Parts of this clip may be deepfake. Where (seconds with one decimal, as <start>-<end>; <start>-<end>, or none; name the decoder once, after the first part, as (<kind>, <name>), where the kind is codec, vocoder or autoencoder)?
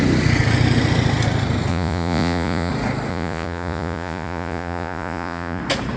1.7-2.7 (vocoder, Vocos); 3.1-5.6